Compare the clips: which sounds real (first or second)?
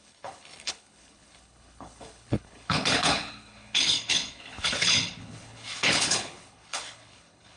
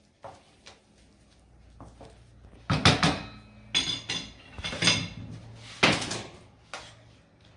second